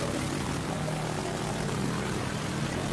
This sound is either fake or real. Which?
real